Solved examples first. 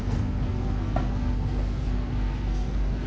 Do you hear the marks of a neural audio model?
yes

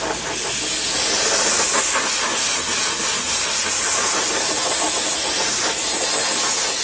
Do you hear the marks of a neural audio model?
no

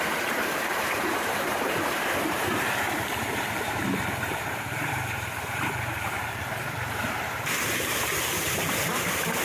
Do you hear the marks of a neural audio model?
yes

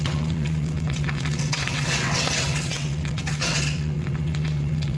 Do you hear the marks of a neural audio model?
yes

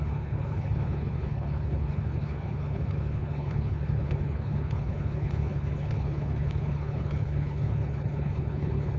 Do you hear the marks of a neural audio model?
yes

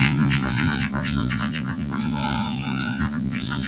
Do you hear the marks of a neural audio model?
yes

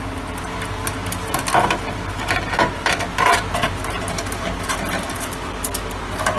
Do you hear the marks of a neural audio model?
no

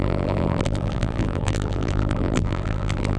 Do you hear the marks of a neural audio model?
yes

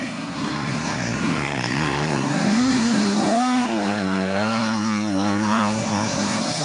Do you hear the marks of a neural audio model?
yes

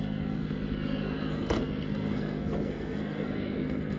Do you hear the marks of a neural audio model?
yes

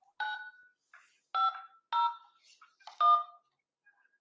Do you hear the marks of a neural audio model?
no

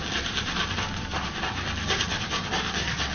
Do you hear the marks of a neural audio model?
no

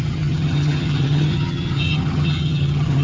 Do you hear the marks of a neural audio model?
yes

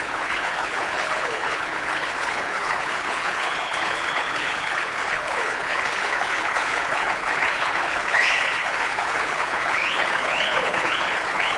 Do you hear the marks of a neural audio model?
yes